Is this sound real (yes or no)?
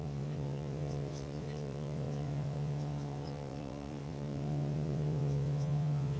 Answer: no